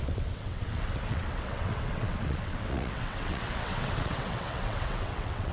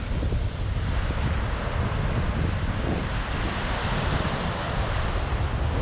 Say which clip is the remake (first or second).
first